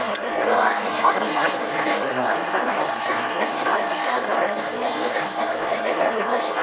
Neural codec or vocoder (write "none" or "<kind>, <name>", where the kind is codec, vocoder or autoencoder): codec, SNAC